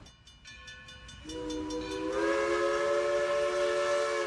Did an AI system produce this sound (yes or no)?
no